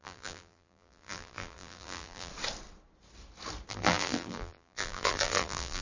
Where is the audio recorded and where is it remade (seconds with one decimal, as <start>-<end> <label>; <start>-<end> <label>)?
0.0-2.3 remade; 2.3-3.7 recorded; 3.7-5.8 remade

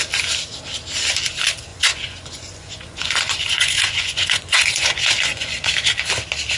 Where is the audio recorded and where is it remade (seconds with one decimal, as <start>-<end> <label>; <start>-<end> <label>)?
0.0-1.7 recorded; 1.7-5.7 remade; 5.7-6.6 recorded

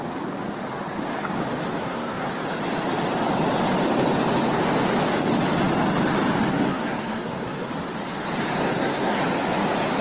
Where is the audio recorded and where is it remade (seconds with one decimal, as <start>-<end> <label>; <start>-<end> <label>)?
0.0-1.8 recorded; 1.8-2.3 remade; 2.3-6.5 recorded; 6.5-7.7 remade; 7.7-8.6 recorded; 8.6-9.2 remade; 9.2-10.0 recorded

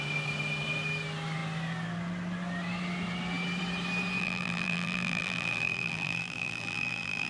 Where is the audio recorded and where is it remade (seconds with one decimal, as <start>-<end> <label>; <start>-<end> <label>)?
0.0-4.2 recorded; 4.2-7.3 remade

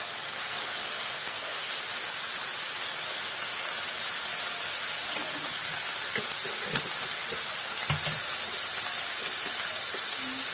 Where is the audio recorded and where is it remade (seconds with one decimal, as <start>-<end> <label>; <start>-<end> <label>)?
0.0-0.4 recorded; 0.4-1.7 remade; 1.7-10.5 recorded

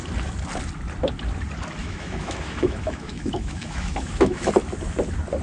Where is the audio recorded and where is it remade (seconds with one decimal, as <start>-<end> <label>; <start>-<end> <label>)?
0.0-1.8 recorded; 1.8-4.5 remade; 4.5-5.4 recorded

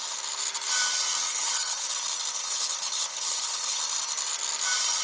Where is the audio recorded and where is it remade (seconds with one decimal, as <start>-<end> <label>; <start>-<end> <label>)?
0.0-1.3 recorded; 1.3-1.9 remade; 1.9-2.3 recorded; 2.3-3.8 remade; 3.8-5.0 recorded

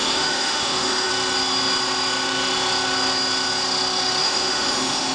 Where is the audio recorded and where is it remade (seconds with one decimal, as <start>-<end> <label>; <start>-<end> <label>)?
0.0-1.1 remade; 1.1-4.2 recorded; 4.2-5.1 remade